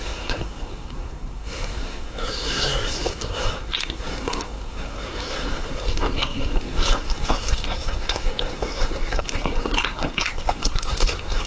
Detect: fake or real fake